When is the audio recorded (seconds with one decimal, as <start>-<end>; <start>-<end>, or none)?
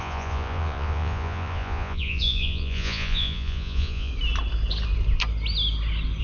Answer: 4.1-6.2